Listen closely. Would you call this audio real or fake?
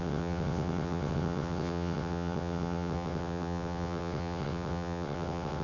fake